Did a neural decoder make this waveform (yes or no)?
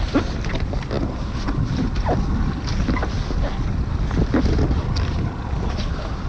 no